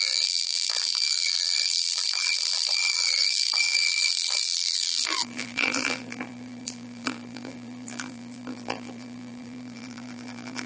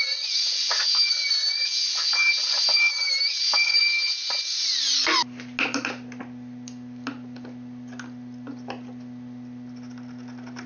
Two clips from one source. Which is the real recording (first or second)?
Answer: second